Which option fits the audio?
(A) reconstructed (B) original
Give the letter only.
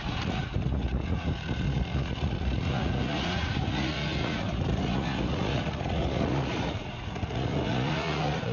A